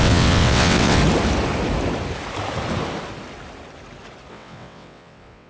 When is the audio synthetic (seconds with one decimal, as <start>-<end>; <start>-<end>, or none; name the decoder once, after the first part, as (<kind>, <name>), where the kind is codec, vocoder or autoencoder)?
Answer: 0.0-1.0 (vocoder, WaveNeXt); 4.3-5.5